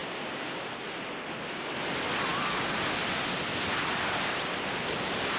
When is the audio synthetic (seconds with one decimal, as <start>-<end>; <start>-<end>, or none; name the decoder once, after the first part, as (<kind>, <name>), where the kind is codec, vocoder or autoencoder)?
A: 0.0-0.5 (codec, DAC)